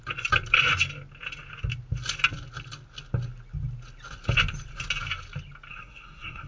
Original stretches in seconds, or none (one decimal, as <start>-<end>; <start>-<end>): 0.0-5.7